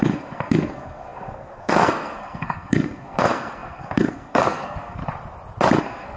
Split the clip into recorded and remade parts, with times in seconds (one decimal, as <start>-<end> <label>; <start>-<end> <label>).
0.0-5.0 remade; 5.0-5.8 recorded; 5.8-6.2 remade